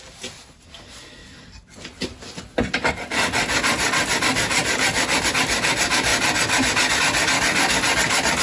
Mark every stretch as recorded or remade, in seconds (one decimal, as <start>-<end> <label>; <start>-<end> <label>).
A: 0.0-8.4 recorded